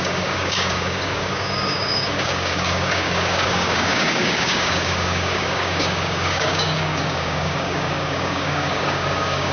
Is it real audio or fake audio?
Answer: fake